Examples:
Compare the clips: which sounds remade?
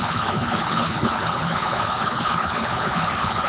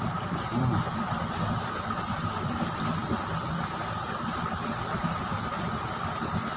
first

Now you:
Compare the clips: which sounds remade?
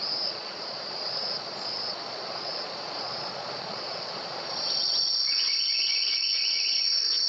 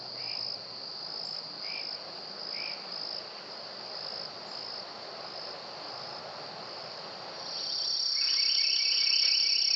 first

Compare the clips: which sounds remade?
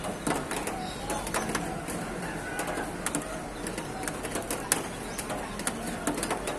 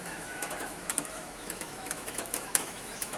second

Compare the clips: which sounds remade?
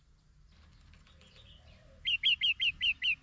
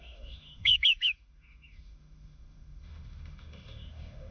second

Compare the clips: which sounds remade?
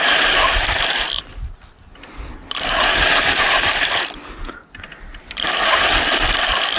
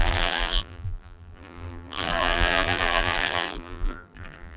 second